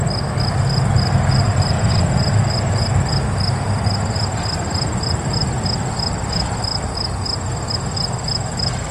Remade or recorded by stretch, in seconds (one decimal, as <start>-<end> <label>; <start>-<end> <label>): 0.0-8.9 recorded